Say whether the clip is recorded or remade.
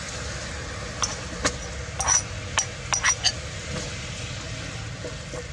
recorded